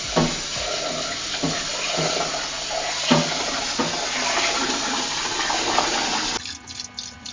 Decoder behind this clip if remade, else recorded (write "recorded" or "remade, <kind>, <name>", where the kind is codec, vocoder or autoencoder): recorded